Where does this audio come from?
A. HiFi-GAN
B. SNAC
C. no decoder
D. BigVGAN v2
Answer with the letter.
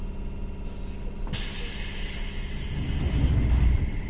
C